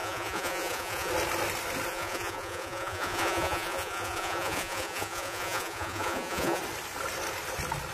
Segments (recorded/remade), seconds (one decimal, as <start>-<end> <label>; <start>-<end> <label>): 0.0-1.1 remade; 1.1-1.9 recorded; 1.9-6.6 remade; 6.6-7.9 recorded